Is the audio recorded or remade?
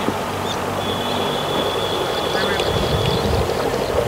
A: recorded